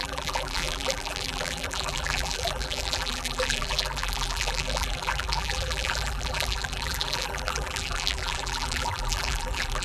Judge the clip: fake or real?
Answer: fake